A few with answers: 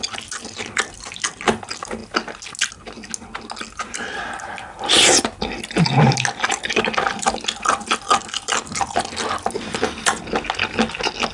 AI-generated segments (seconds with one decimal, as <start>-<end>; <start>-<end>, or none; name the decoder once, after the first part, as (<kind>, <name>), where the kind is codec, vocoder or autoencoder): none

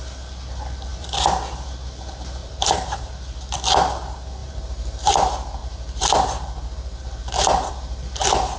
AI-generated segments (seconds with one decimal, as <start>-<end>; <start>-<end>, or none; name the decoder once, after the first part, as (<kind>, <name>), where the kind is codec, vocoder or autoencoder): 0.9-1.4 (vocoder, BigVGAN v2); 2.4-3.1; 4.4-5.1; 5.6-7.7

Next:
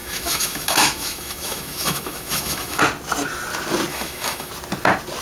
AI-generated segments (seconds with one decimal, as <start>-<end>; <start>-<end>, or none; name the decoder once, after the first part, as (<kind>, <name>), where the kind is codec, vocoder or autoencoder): 0.0-2.8 (autoencoder, DAC-VAE); 3.9-4.5

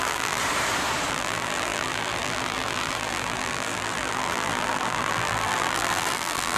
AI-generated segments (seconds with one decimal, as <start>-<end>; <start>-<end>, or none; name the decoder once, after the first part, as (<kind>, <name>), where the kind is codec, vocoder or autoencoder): 0.0-0.4 (vocoder, BigVGAN v2); 1.1-6.6